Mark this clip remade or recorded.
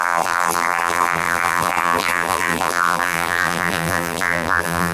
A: remade